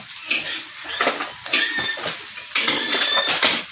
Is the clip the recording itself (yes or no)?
yes